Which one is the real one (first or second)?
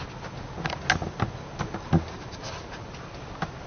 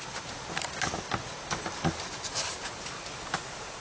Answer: first